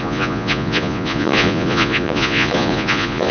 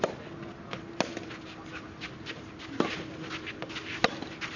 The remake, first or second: first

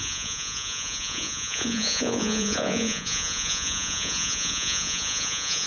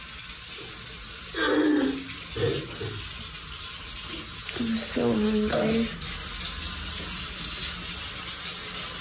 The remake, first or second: first